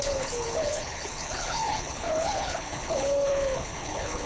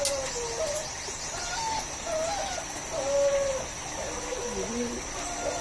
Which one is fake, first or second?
first